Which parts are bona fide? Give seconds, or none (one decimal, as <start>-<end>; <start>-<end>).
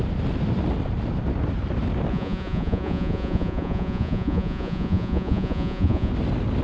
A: 0.0-2.1; 6.1-6.6